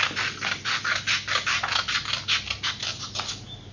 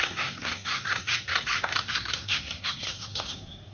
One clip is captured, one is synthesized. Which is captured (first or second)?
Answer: first